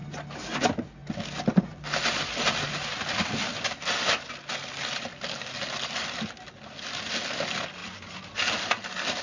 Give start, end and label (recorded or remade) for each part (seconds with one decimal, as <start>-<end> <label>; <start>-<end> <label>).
0.0-9.2 recorded